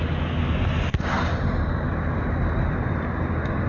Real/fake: real